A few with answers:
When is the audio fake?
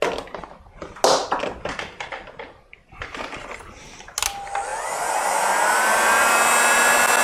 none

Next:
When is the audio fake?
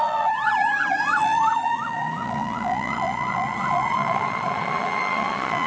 0.0-5.7 (vocoder, Vocos)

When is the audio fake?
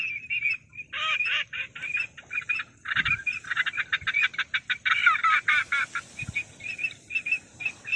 none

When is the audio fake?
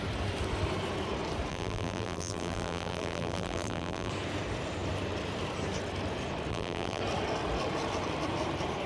1.5-4.1 (vocoder, BigVGAN v2); 6.5-7.0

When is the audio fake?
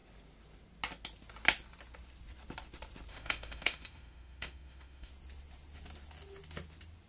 3.1-5.1 (autoencoder, DAC-VAE)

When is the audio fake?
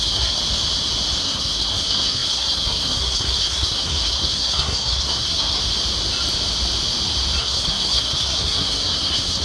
0.0-0.4 (codec, SNAC); 1.2-5.6; 7.4-9.4